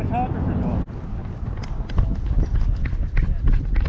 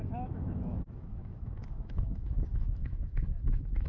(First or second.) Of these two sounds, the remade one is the second